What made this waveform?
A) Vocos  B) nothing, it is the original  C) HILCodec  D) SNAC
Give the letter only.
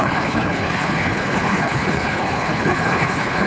C